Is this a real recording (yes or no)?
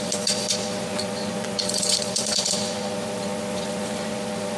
no